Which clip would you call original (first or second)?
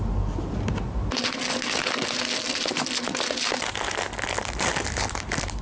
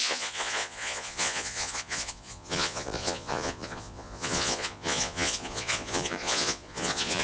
first